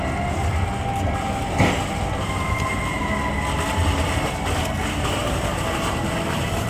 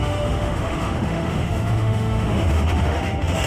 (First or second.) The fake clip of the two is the second